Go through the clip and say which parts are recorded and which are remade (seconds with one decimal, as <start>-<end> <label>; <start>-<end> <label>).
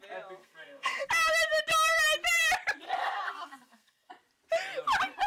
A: 0.0-0.4 recorded; 0.4-1.1 remade; 1.1-3.0 recorded; 3.0-4.1 remade; 4.1-5.3 recorded